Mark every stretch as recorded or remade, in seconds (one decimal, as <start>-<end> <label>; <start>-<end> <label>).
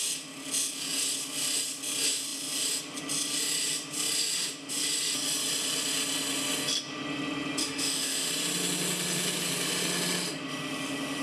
0.0-7.6 recorded; 7.6-8.3 remade; 8.3-11.2 recorded